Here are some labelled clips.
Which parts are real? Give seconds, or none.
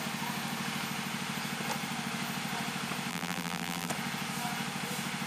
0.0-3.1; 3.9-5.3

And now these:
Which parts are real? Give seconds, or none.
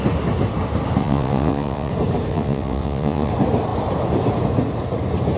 0.0-1.0; 1.9-2.3; 3.3-5.4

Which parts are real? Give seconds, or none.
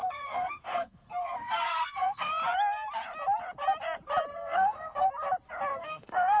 2.3-4.3; 5.1-5.7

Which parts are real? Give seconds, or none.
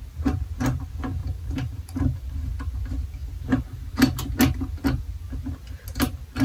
0.0-1.2; 2.5-3.2; 4.2-6.4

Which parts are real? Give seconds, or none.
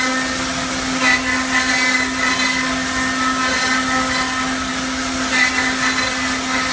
0.0-6.7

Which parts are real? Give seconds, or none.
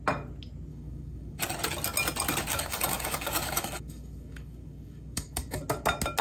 0.0-0.7; 1.4-2.5; 5.6-6.2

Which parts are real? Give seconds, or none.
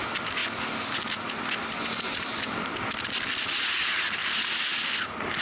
0.0-5.4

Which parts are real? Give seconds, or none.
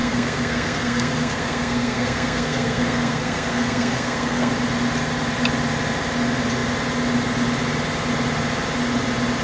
4.5-9.4